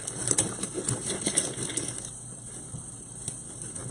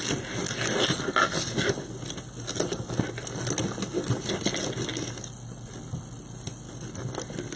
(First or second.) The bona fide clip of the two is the second